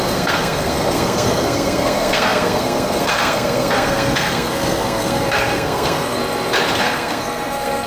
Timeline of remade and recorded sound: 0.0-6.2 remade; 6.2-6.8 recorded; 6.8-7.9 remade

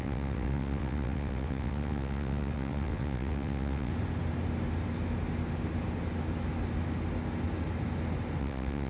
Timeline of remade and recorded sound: 0.0-3.9 remade; 3.9-8.4 recorded; 8.4-8.9 remade